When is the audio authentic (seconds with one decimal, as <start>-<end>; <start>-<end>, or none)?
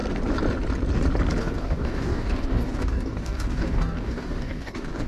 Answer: 0.0-1.4